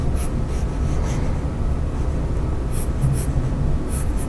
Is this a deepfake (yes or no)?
no